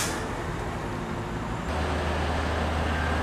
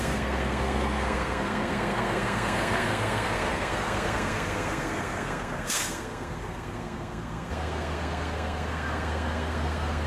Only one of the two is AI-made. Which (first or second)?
second